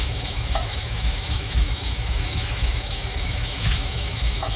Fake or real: fake